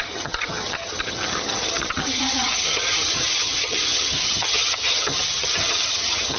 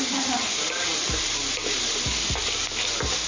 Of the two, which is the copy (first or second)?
first